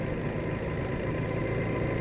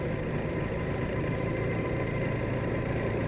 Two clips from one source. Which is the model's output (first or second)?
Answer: second